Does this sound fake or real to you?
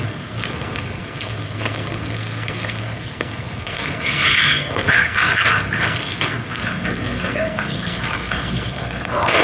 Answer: fake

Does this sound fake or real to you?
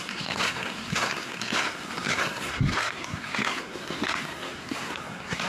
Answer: fake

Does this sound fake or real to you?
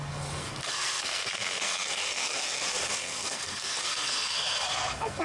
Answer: fake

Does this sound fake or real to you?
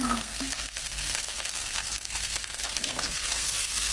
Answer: fake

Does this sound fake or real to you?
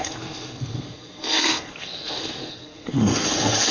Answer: fake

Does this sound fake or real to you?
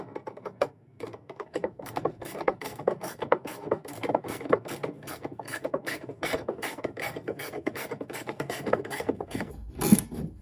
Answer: fake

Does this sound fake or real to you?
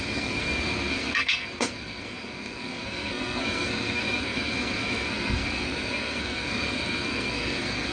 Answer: fake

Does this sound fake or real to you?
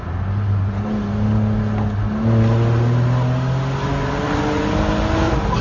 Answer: real